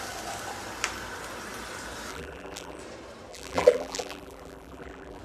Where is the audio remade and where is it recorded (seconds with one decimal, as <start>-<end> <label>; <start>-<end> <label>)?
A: 0.0-2.1 recorded; 2.1-2.8 remade; 2.8-3.3 recorded; 3.3-5.2 remade